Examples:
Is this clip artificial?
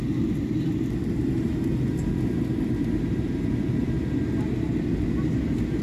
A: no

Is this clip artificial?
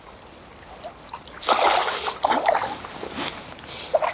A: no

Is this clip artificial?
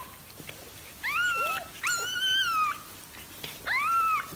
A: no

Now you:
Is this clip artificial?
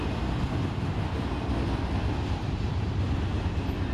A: no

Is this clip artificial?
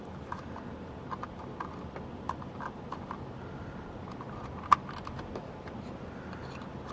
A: no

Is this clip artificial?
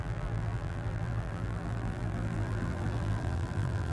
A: yes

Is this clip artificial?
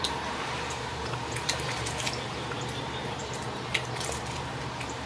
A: yes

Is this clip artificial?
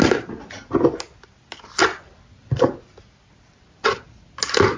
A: no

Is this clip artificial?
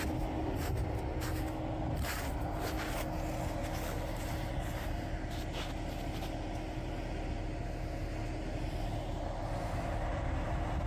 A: no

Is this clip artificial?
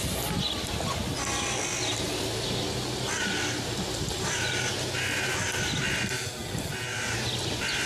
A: no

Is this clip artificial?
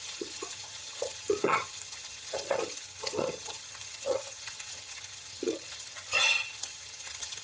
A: yes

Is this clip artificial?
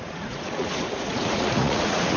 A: yes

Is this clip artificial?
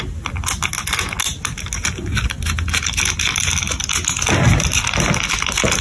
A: no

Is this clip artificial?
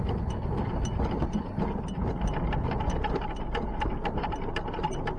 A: no